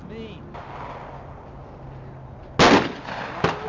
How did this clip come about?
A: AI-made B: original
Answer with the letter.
B